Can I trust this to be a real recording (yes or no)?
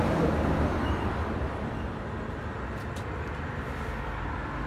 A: yes